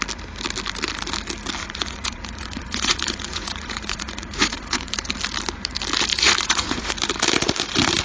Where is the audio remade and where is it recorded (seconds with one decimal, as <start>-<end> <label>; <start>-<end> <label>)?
0.0-1.6 recorded; 1.6-4.9 remade; 4.9-6.1 recorded; 6.1-6.9 remade; 6.9-8.0 recorded

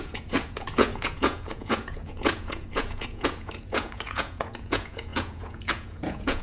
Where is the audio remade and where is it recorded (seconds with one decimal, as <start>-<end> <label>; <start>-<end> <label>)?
0.0-6.4 remade

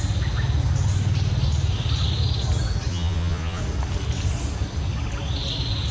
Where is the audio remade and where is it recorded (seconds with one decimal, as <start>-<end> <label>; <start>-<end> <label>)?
0.0-2.9 recorded; 2.9-3.6 remade; 3.6-5.9 recorded

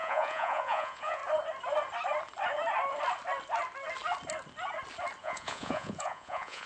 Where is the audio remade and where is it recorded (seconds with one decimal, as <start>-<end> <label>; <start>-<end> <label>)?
0.0-1.2 remade; 1.2-5.2 recorded; 5.2-6.7 remade

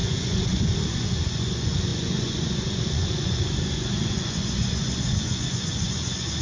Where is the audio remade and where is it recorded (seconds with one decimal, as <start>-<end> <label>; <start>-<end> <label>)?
0.0-6.4 remade

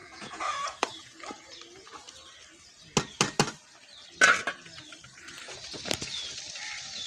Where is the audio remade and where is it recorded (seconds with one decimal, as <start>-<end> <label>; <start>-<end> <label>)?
0.0-1.2 remade; 1.2-7.1 recorded

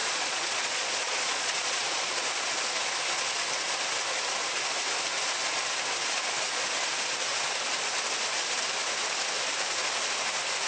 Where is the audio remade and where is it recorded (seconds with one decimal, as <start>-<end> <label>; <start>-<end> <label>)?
0.0-2.1 remade; 2.1-10.7 recorded

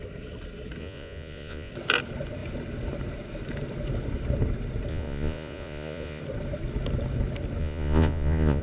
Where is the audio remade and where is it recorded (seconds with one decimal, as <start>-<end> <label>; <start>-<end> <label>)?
0.0-0.8 recorded; 0.8-1.7 remade; 1.7-4.9 recorded; 4.9-6.2 remade; 6.2-7.6 recorded; 7.6-8.6 remade